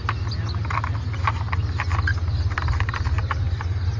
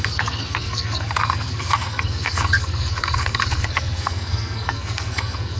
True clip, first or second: first